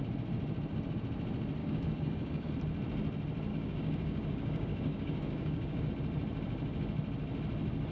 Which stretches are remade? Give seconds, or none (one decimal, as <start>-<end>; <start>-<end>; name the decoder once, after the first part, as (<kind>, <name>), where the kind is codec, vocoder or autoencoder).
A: 1.6-2.5 (codec, DAC); 3.5-5.9